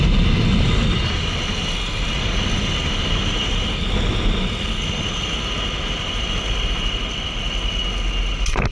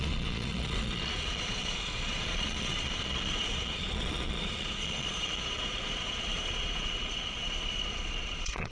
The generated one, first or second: second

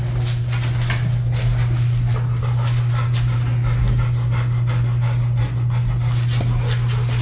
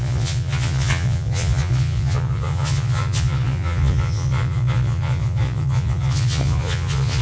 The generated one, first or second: second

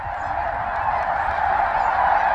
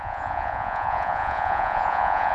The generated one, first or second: second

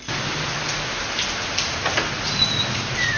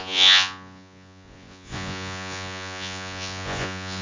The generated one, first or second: second